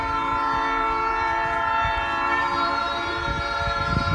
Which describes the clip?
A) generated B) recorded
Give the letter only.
A